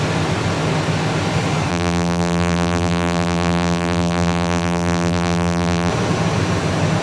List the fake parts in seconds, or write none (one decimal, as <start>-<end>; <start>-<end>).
1.7-5.9